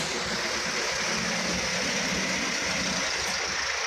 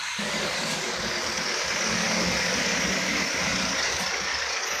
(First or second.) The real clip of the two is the first